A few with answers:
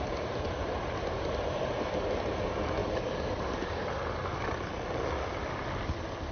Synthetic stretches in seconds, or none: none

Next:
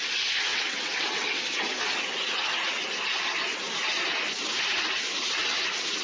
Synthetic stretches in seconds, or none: 0.5-1.4 (vocoder, WaveNeXt)

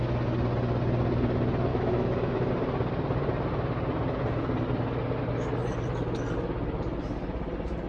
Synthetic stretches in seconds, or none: 1.7-2.5 (autoencoder, DAC-VAE)

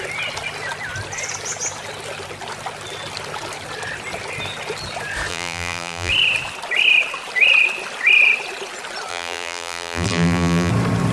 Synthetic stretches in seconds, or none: 5.3-6.1 (vocoder, BigVGAN v2); 9.1-10.7

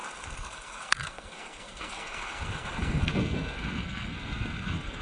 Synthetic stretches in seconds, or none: 0.0-5.0 (codec, SNAC)

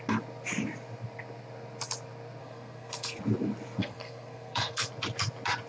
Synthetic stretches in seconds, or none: 2.4-3.2 (codec, SNAC); 3.8-4.9